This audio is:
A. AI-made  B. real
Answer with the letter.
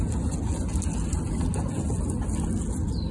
B